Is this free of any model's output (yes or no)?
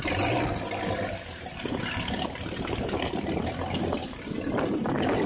yes